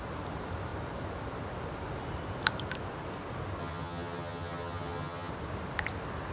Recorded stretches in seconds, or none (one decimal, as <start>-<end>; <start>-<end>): 0.0-3.6; 5.3-6.3